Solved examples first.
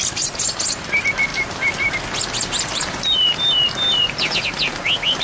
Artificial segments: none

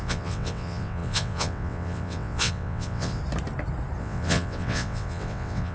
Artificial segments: 0.0-3.2 (vocoder, WaveNeXt); 4.0-5.7

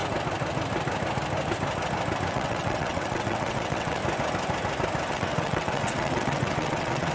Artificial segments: 2.3-4.0 (vocoder, WaveNeXt); 5.1-7.1